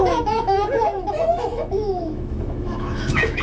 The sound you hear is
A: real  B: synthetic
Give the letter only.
B